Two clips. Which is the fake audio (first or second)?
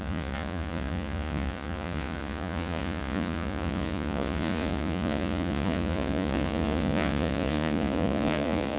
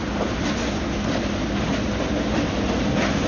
first